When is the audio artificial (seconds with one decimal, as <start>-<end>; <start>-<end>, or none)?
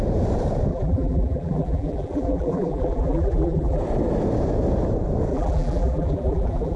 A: 0.7-3.8; 5.3-6.8